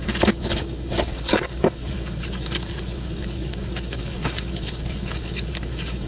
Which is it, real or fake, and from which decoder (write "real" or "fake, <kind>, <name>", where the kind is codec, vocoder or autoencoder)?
fake, codec, DAC